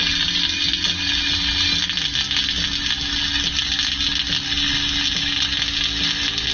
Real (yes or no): yes